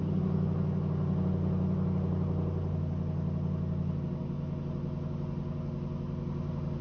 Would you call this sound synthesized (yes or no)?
no